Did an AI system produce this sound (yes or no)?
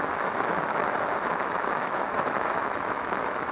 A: yes